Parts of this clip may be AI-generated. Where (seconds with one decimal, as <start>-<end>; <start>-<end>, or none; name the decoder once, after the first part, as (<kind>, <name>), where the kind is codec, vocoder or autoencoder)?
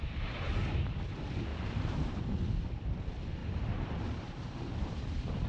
0.0-0.6 (vocoder, BigVGAN v2); 1.5-2.2; 3.4-5.5